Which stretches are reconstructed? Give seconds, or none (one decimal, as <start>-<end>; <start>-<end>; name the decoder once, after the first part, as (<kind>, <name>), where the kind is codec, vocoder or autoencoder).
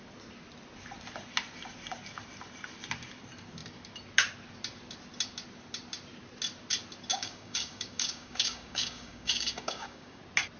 7.1-10.2 (codec, DAC)